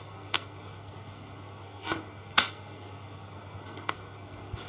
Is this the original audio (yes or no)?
no